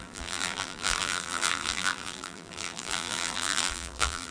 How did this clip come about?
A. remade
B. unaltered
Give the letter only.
A